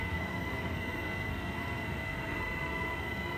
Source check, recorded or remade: remade